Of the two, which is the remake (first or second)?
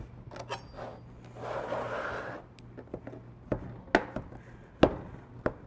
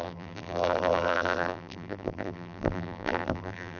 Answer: second